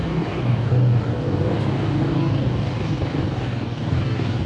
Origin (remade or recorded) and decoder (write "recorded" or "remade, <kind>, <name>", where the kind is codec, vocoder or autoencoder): remade, codec, DAC